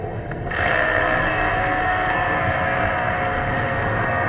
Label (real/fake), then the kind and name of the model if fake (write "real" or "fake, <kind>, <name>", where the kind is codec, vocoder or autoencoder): fake, codec, SNAC